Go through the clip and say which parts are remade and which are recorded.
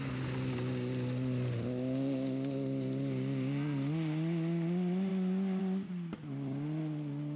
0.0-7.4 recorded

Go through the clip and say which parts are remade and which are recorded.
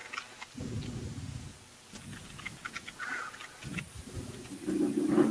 0.0-5.3 recorded